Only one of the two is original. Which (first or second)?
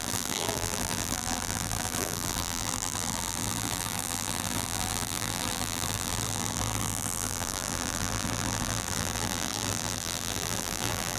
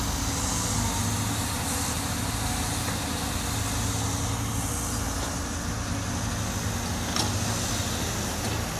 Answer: second